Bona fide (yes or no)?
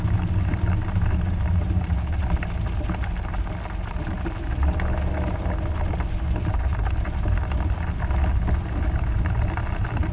yes